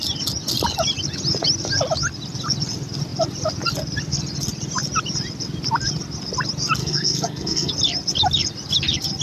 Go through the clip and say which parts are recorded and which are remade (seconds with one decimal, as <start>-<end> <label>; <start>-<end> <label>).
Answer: 0.0-6.8 recorded; 6.8-7.7 remade; 7.7-9.2 recorded